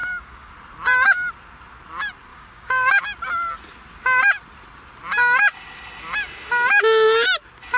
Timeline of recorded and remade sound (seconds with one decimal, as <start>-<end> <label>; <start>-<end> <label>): 0.0-0.5 remade; 0.5-2.3 recorded; 2.3-3.0 remade; 3.0-7.8 recorded